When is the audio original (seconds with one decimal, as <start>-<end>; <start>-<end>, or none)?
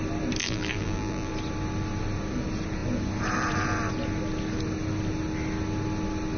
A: 0.0-0.4; 1.3-6.4